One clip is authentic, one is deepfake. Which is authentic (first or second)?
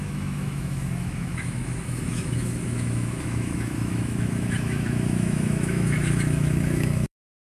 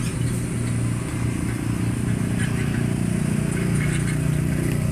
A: second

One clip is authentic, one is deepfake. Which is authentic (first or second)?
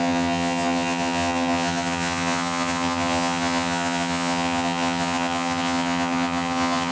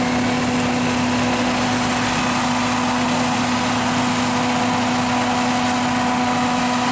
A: second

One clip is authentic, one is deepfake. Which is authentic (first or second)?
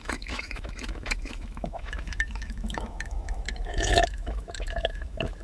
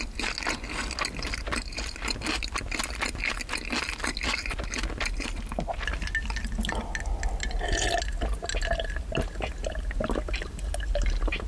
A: second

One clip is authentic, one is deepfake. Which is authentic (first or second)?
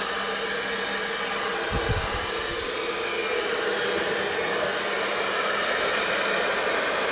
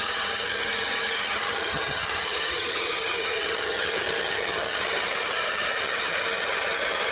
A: first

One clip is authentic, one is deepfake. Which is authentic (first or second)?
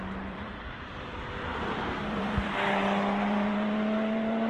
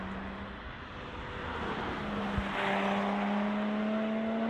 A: second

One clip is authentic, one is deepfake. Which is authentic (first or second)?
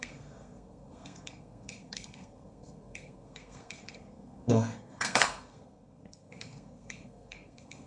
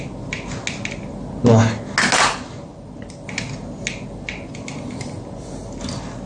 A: second